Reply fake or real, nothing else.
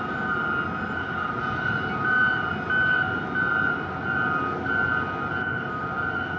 real